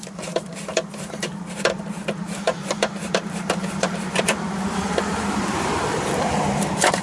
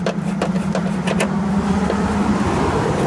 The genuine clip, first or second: second